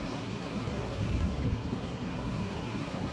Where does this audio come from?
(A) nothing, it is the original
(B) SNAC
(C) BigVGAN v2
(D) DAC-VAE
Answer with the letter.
B